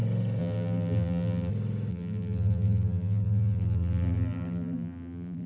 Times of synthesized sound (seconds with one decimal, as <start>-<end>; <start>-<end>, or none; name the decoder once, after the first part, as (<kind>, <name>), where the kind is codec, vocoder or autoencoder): 0.4-1.5 (vocoder, BigVGAN v2); 1.9-5.5